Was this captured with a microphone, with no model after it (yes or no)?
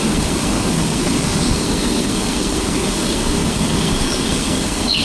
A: no